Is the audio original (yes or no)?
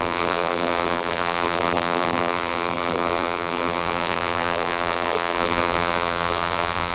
no